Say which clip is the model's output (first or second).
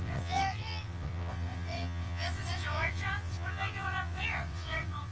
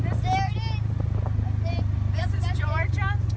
first